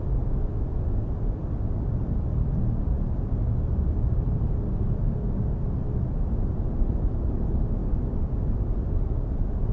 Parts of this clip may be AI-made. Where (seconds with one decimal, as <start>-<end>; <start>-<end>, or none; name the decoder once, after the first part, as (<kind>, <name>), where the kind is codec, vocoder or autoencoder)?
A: none